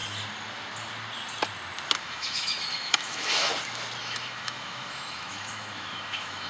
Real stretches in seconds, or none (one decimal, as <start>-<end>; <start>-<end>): 0.0-2.0; 3.5-4.0